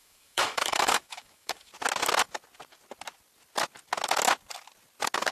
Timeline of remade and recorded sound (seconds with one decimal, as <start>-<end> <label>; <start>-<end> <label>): 0.0-1.7 remade; 1.7-5.3 recorded

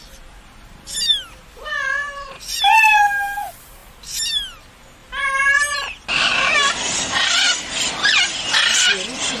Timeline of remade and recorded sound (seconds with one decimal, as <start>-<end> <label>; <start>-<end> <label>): 0.0-2.0 recorded; 2.0-2.6 remade; 2.6-5.0 recorded; 5.0-6.4 remade; 6.4-9.4 recorded

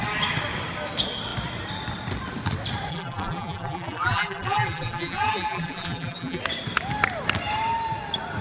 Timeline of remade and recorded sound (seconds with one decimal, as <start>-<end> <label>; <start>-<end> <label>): 0.0-2.9 recorded; 2.9-6.4 remade; 6.4-8.4 recorded

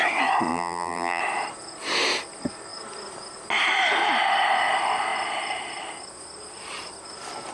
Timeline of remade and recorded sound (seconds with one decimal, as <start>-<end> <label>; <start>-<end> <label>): 0.0-0.5 recorded; 0.5-1.2 remade; 1.2-7.5 recorded

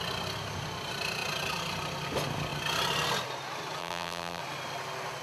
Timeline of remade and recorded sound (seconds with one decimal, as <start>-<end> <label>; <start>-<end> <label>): 0.0-3.8 recorded; 3.8-4.4 remade; 4.4-5.2 recorded

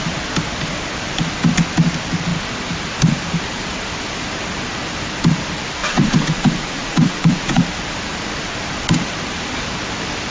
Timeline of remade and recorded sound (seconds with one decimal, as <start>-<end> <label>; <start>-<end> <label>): 0.0-5.8 recorded; 5.8-7.6 remade; 7.6-10.3 recorded